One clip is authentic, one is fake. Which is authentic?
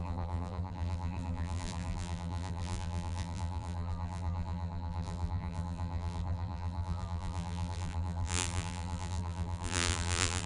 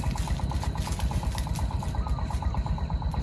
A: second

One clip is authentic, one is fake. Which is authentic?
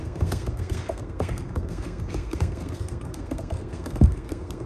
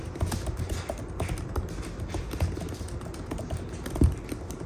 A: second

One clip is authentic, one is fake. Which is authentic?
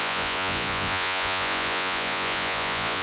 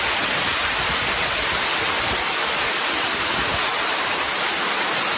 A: second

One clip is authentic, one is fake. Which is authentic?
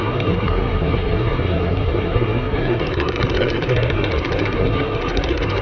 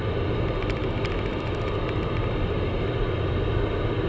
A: second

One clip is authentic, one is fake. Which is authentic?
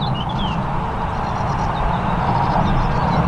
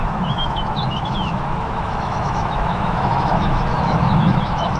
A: first